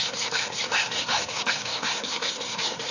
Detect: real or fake fake